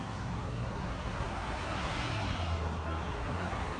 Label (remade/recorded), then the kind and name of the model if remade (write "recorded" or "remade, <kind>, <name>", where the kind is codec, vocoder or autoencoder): remade, codec, SNAC